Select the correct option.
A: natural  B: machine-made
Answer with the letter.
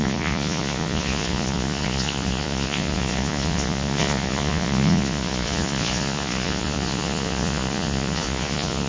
B